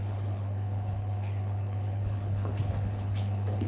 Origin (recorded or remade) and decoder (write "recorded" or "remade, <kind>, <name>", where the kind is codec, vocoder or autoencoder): remade, codec, HILCodec